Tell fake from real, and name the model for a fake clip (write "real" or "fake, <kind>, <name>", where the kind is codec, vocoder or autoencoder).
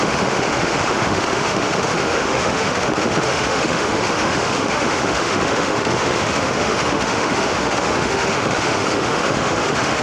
fake, autoencoder, DAC-VAE